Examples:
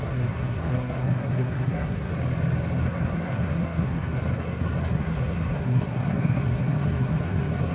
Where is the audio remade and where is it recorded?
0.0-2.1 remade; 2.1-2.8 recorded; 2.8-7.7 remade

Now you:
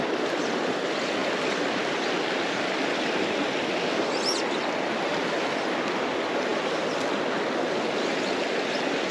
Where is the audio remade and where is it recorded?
0.0-9.1 recorded

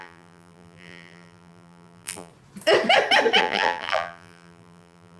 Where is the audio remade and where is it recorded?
0.0-2.3 remade; 2.3-3.4 recorded; 3.4-5.2 remade

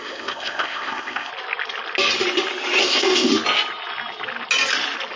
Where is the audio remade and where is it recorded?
0.0-1.3 remade; 1.3-2.8 recorded; 2.8-3.3 remade; 3.3-5.2 recorded